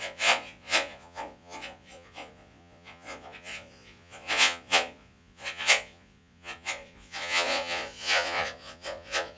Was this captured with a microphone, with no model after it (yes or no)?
no